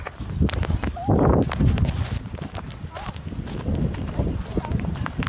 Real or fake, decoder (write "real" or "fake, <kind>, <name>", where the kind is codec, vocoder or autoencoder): real